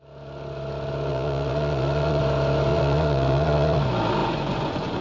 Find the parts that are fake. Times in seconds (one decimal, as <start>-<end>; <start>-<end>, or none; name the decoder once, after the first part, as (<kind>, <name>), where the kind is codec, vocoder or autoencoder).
1.1-2.2 (vocoder, Vocos); 2.7-3.8; 4.2-5.0